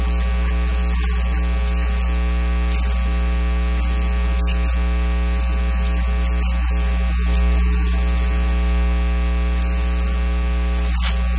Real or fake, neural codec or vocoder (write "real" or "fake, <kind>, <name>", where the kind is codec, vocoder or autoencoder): real